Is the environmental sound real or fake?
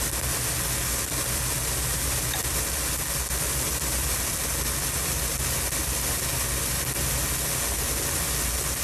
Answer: real